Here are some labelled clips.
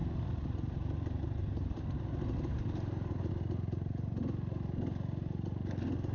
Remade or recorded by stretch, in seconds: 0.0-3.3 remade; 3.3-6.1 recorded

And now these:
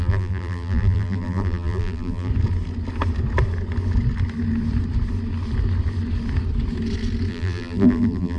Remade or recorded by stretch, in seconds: 0.0-2.3 remade; 2.3-7.3 recorded; 7.3-8.4 remade

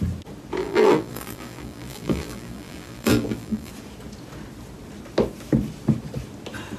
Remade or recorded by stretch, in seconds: 0.0-0.6 recorded; 0.6-3.7 remade; 3.7-6.8 recorded

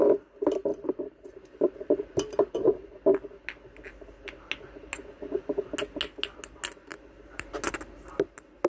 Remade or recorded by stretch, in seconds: 0.0-0.7 recorded; 0.7-2.9 remade; 2.9-6.9 recorded; 6.9-7.5 remade; 7.5-8.7 recorded

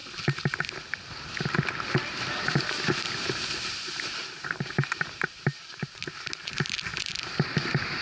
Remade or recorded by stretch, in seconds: 0.0-2.3 recorded; 2.3-8.0 remade

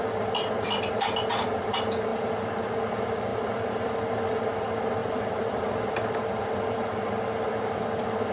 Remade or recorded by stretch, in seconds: 0.0-3.3 recorded; 3.3-3.9 remade; 3.9-5.0 recorded; 5.0-5.8 remade; 5.8-8.3 recorded

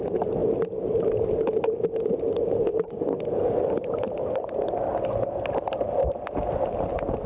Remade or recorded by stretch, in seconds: 0.0-7.3 recorded